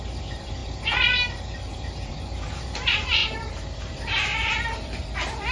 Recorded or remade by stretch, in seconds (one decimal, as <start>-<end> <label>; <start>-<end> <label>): 0.0-5.5 remade